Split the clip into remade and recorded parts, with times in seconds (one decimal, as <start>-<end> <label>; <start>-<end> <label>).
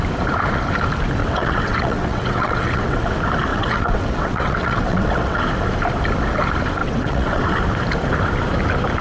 0.0-1.2 recorded; 1.2-3.1 remade; 3.1-3.5 recorded; 3.5-5.4 remade; 5.4-6.8 recorded; 6.8-7.4 remade; 7.4-9.0 recorded